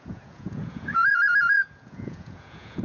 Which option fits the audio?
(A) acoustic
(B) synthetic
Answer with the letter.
B